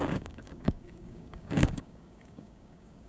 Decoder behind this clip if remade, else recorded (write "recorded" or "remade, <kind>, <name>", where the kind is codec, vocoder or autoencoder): remade, codec, DAC